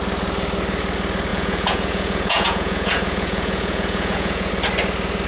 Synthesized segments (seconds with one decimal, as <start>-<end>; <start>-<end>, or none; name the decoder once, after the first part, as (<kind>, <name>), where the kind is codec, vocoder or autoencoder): 1.3-4.5 (vocoder, Vocos)